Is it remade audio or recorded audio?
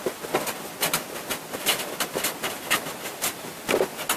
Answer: recorded